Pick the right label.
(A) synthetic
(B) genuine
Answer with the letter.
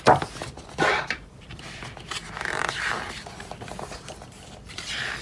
A